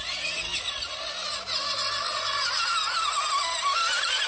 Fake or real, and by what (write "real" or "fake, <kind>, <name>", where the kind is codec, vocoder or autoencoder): real